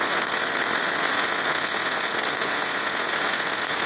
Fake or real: fake